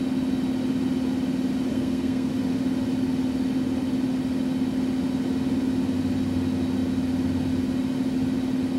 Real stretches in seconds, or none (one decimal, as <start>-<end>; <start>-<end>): 0.0-1.7; 2.3-8.8